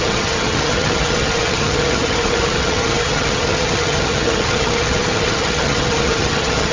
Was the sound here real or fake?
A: fake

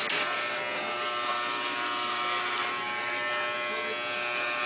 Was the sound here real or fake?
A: real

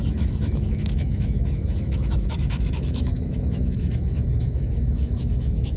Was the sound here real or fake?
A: fake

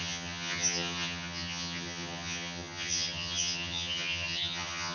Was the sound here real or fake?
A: fake